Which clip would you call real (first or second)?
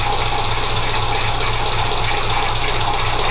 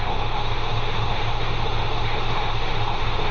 first